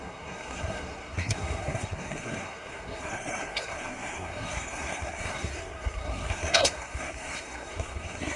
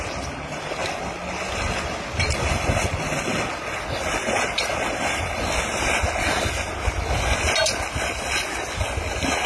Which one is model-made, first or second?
first